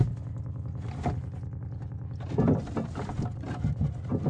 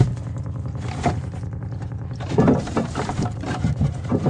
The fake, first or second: second